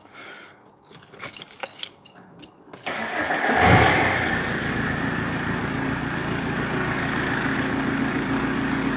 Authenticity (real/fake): fake